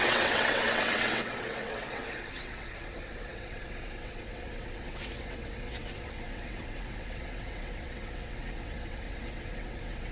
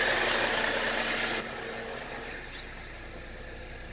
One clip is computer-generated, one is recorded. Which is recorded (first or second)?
second